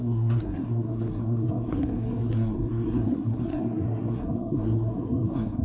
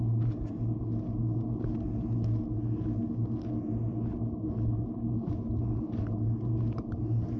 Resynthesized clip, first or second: first